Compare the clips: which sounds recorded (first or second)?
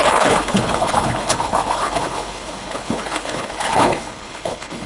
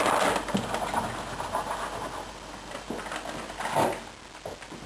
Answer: second